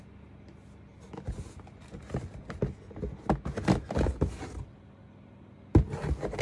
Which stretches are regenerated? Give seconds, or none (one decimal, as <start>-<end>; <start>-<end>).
none